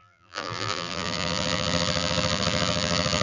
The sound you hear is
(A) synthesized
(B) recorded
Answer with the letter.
A